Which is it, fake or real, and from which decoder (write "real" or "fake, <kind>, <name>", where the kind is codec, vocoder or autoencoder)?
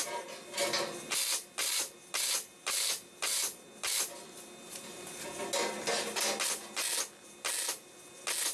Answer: real